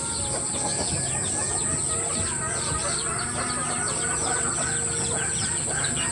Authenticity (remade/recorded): recorded